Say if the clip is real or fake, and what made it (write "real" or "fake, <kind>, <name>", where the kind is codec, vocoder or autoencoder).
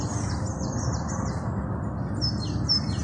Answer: real